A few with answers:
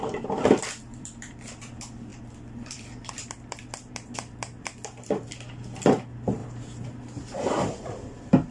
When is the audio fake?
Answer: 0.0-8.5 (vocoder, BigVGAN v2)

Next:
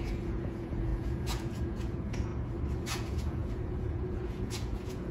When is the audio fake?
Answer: 0.0-2.3 (vocoder, Vocos); 2.8-5.1

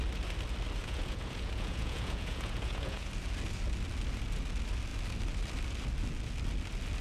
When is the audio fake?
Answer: 0.8-3.1 (vocoder, Vocos)

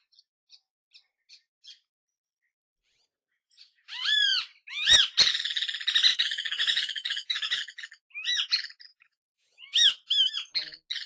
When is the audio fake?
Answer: 6.1-7.6 (autoencoder, DAC-VAE); 8.9-10.3